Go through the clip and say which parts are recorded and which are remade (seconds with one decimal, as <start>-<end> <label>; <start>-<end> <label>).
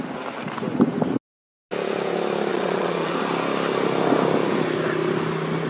0.0-2.5 recorded; 2.5-3.2 remade; 3.2-5.7 recorded